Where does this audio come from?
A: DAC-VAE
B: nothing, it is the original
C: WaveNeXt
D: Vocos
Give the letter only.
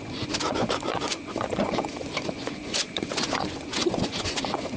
D